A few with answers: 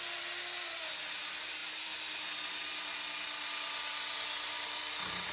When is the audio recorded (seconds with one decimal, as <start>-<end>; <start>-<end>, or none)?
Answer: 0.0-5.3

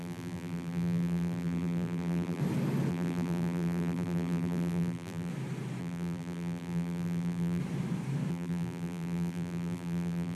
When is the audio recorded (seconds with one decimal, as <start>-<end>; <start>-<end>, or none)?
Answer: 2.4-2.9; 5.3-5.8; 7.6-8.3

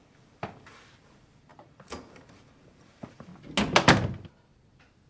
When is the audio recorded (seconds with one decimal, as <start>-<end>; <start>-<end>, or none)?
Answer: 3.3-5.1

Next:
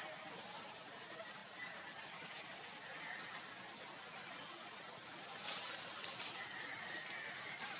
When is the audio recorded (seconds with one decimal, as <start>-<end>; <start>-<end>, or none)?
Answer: 0.0-7.8

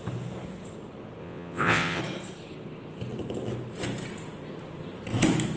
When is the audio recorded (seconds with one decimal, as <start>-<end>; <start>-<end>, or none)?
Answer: 0.0-1.2; 2.0-5.6

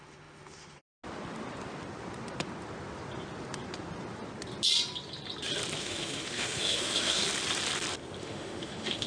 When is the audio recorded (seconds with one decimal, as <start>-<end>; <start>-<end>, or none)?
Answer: 0.8-5.8; 7.2-8.2